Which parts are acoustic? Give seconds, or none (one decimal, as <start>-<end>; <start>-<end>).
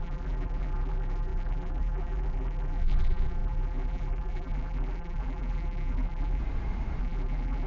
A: 6.4-7.0